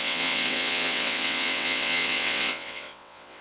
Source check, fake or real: fake